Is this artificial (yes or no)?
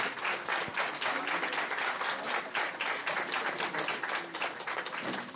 no